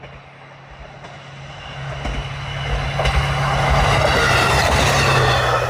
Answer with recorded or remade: recorded